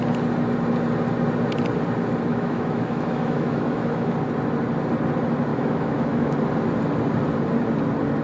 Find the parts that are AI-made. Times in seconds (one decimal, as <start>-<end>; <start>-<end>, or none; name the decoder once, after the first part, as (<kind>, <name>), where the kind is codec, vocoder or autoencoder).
2.3-4.1 (autoencoder, DAC-VAE); 5.5-6.3